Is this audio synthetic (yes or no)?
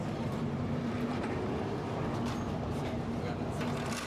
yes